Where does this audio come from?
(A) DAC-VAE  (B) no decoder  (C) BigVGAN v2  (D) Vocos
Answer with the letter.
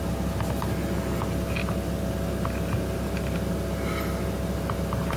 B